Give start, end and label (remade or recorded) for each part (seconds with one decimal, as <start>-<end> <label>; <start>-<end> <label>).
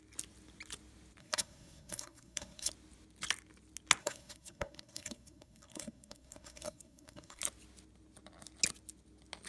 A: 0.0-1.2 recorded; 1.2-2.7 remade; 2.7-4.0 recorded; 4.0-7.4 remade; 7.4-9.5 recorded